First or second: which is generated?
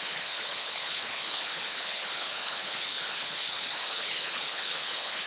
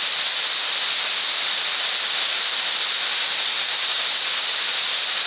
first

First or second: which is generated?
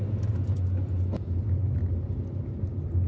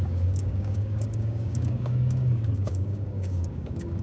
second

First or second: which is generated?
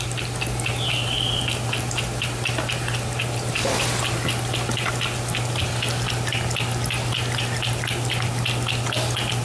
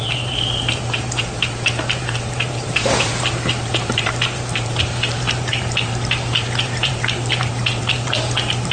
second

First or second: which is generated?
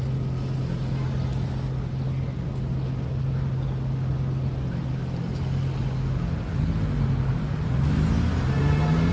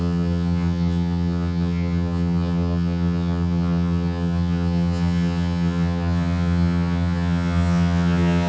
second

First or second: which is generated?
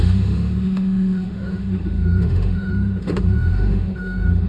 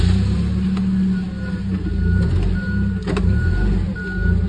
first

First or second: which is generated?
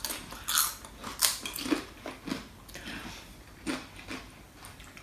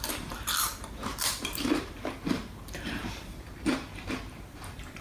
second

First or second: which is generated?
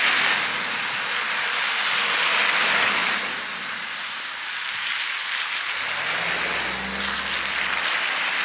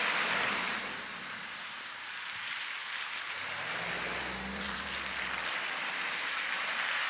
second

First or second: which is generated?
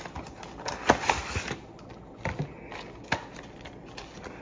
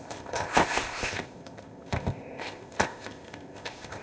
second